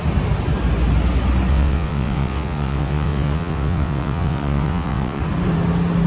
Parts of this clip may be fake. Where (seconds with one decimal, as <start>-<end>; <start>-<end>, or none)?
1.5-5.2